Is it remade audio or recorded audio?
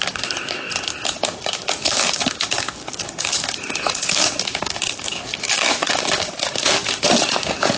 remade